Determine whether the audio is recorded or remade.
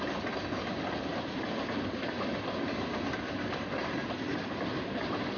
recorded